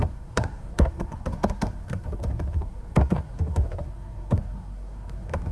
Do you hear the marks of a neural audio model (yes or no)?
yes